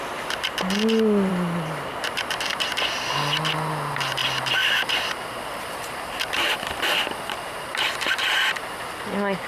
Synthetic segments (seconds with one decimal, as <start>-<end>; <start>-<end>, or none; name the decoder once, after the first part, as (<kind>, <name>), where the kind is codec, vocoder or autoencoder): 1.3-1.9 (vocoder, BigVGAN v2); 4.2-7.6